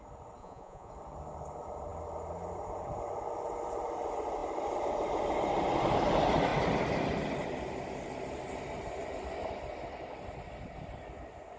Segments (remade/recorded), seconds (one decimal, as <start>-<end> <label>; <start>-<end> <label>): 0.0-0.4 recorded; 0.4-0.9 remade; 0.9-11.6 recorded